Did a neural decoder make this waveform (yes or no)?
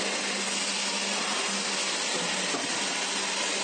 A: no